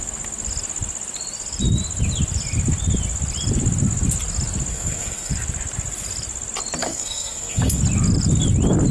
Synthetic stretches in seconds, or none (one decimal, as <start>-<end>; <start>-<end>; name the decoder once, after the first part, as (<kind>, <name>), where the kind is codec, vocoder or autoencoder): 4.7-5.3 (codec, SNAC); 6.8-7.8